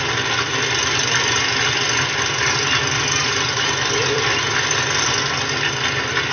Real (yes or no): yes